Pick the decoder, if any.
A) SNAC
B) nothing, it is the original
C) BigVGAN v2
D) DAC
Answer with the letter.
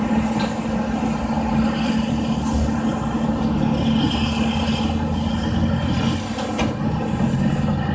B